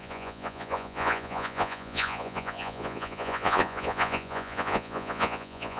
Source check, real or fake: fake